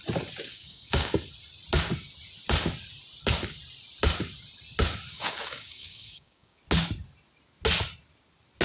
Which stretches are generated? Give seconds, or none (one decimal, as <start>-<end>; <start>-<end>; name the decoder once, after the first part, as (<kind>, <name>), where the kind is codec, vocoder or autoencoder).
0.5-1.1 (codec, DAC); 5.1-6.6

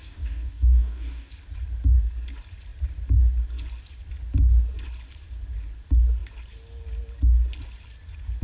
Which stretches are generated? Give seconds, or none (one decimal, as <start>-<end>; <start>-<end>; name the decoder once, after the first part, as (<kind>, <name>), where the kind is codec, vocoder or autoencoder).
0.0-1.3 (codec, DAC)

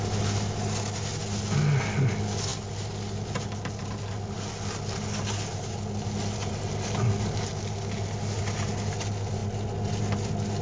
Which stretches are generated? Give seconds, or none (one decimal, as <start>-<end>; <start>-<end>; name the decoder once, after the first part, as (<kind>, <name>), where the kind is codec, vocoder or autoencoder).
none

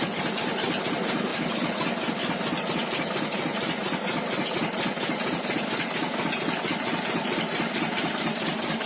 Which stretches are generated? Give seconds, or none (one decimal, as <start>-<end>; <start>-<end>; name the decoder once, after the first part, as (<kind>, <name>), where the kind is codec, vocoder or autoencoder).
none

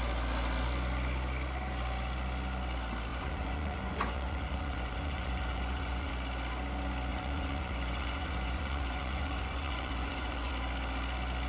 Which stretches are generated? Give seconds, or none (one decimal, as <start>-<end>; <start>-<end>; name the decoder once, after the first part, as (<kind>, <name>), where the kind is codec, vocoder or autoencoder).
3.1-6.1 (vocoder, Vocos); 7.1-10.5

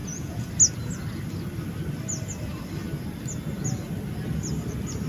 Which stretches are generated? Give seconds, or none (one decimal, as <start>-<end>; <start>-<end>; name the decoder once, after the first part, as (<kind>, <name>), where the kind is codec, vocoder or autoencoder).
0.0-0.5 (vocoder, Vocos)

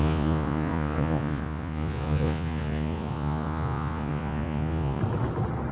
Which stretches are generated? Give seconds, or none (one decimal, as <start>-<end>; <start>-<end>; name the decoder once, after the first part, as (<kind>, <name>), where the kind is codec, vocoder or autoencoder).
0.0-5.0 (vocoder, Vocos)

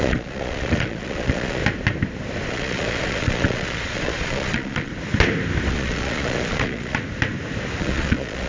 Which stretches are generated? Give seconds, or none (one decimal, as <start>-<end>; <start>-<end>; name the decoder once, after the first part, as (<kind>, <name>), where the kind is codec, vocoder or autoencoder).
0.0-1.6 (vocoder, Vocos); 2.5-4.9; 5.7-7.0; 7.8-8.5